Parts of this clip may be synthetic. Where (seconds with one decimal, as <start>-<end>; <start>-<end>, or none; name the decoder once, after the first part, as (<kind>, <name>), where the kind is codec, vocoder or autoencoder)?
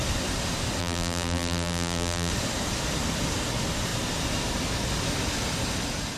0.8-2.3 (vocoder, BigVGAN v2)